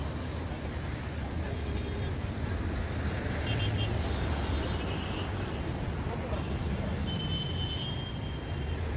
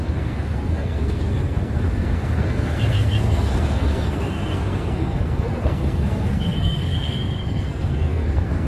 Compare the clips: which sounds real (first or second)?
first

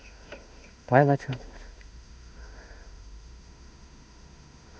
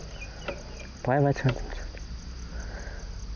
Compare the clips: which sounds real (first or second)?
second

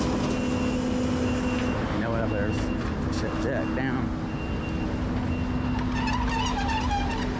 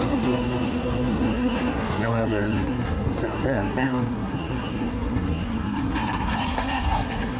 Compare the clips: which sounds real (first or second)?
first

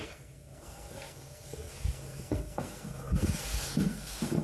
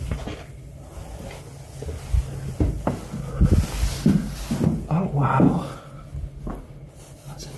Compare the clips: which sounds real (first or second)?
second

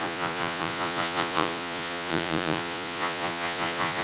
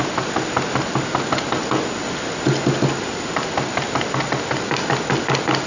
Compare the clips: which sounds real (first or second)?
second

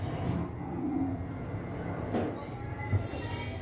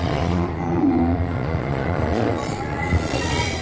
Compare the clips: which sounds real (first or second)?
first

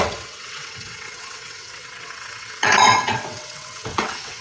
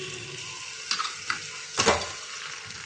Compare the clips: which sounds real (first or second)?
second